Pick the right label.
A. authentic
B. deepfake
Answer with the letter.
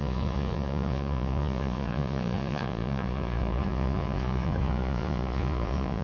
B